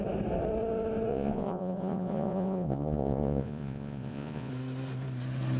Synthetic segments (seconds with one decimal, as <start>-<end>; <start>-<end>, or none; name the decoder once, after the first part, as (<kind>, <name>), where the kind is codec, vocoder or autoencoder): 1.1-4.5 (vocoder, Vocos)